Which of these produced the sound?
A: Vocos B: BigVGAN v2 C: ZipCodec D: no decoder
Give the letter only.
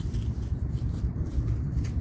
D